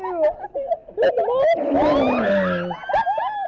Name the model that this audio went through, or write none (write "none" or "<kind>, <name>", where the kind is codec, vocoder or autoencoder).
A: none